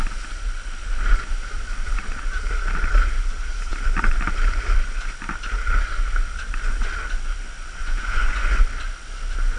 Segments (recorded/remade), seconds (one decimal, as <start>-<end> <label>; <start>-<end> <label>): 0.0-7.8 recorded; 7.8-8.6 remade; 8.6-9.6 recorded